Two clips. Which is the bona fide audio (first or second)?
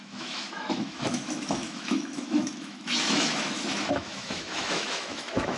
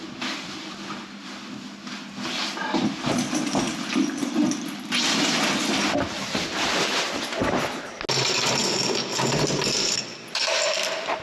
second